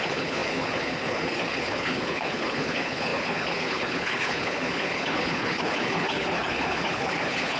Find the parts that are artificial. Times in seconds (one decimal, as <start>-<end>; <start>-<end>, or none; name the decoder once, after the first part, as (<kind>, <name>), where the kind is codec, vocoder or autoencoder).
0.0-7.6 (codec, HILCodec)

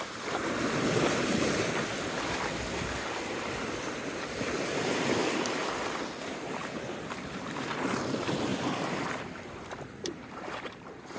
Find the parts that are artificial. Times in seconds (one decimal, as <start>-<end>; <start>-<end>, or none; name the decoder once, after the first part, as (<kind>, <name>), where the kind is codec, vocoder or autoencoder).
0.0-1.9 (vocoder, BigVGAN v2); 3.2-8.5; 9.5-11.2